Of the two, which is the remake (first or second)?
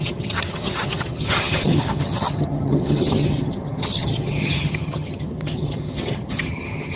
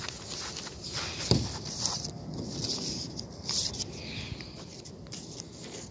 first